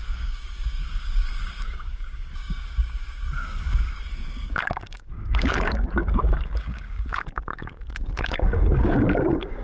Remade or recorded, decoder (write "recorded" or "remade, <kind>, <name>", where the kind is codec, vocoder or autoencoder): remade, codec, DAC